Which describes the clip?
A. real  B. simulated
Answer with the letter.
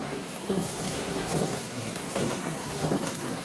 B